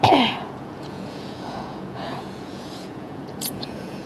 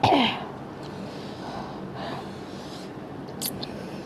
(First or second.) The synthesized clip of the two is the first